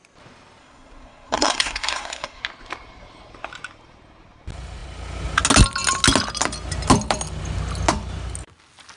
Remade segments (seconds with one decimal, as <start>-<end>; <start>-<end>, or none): 0.6-2.4